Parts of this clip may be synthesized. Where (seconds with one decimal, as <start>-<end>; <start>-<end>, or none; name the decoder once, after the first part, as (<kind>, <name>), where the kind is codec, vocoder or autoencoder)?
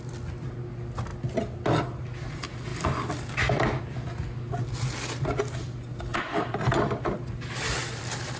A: 6.1-8.0 (vocoder, BigVGAN v2)